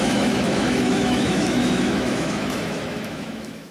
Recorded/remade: remade